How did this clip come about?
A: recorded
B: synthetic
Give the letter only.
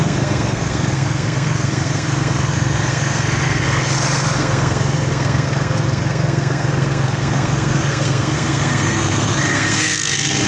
B